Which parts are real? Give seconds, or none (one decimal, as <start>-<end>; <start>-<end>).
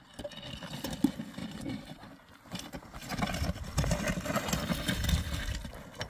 0.0-1.4; 2.1-6.1